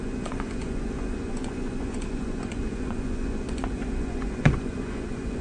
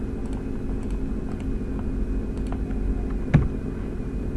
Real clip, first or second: second